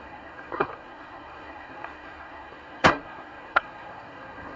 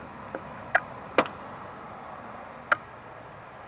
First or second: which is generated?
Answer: first